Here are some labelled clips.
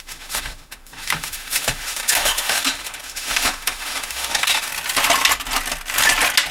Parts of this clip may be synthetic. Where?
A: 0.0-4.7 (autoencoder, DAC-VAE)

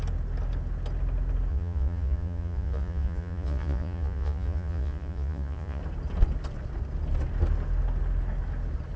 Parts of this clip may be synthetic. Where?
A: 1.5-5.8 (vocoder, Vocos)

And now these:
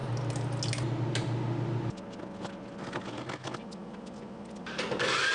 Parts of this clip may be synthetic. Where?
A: none

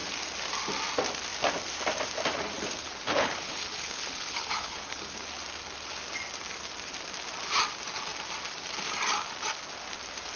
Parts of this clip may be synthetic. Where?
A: 2.8-5.2 (codec, HILCodec)